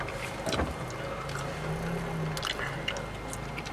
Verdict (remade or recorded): recorded